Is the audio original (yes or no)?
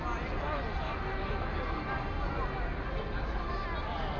yes